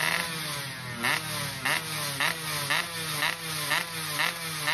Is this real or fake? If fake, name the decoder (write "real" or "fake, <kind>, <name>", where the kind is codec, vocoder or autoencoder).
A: real